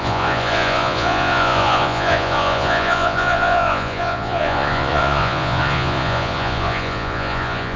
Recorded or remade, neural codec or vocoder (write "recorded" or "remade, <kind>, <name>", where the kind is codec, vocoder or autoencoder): remade, vocoder, Vocos